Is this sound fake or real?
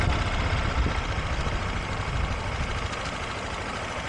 real